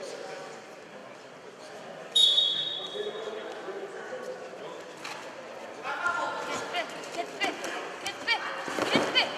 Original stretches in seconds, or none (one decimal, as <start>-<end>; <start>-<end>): 1.0-1.6; 3.4-7.2